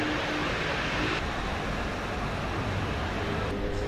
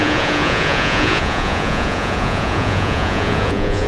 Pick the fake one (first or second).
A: second